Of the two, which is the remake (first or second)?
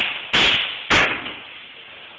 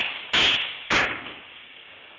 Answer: second